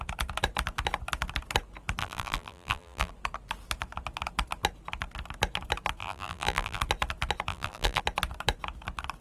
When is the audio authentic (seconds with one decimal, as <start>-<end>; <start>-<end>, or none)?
0.0-2.0; 3.1-6.0; 6.8-7.5; 8.0-9.2